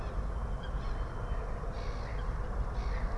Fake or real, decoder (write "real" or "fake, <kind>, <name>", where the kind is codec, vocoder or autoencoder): real